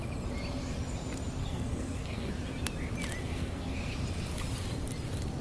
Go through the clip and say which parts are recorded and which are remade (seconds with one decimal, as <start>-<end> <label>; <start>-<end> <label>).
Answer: 0.0-1.4 recorded; 1.4-2.3 remade; 2.3-3.3 recorded; 3.3-4.0 remade; 4.0-5.4 recorded